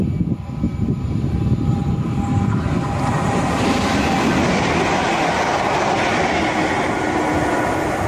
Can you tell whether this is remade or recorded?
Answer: recorded